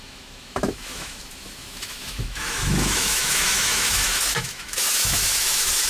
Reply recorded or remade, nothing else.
remade